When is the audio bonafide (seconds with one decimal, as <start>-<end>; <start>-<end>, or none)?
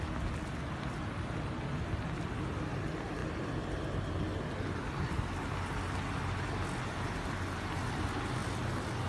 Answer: 0.0-9.1